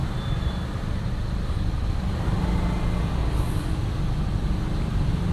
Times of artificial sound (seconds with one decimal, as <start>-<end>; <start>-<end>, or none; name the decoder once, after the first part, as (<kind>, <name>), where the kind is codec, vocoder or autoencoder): 0.0-0.8 (vocoder, BigVGAN v2); 3.2-3.7